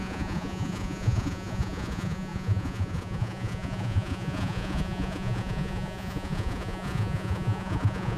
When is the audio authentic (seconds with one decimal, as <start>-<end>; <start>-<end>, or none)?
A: none